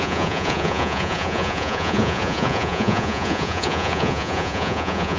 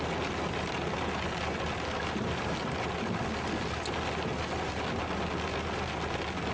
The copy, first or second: first